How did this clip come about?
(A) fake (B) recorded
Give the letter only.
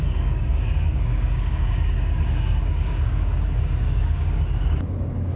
A